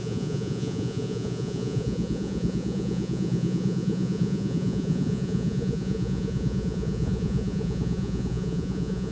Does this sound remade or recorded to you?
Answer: remade